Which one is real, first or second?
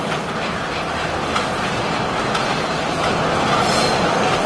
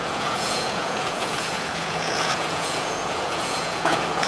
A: first